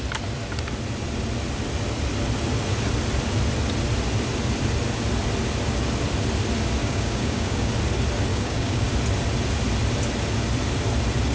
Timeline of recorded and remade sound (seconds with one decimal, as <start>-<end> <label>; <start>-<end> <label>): 0.0-6.8 recorded; 6.8-7.7 remade; 7.7-8.3 recorded; 8.3-8.9 remade; 8.9-11.3 recorded